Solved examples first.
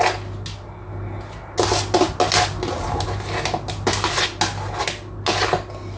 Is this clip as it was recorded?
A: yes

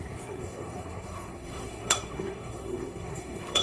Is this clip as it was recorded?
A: no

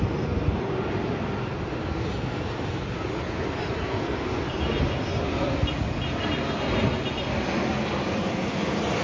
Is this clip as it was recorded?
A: yes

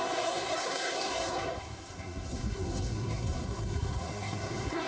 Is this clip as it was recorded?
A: no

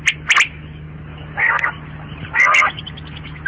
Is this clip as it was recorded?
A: yes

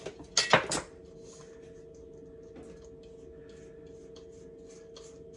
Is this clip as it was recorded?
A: yes